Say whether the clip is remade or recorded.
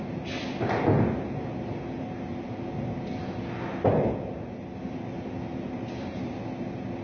recorded